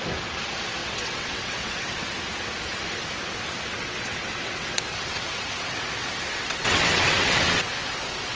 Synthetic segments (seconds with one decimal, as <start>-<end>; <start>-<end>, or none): 0.8-2.0; 3.7-7.7